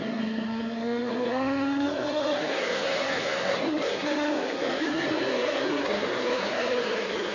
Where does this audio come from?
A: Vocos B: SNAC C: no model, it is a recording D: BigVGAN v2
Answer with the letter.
B